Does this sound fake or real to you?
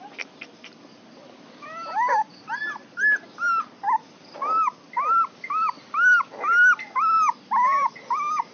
real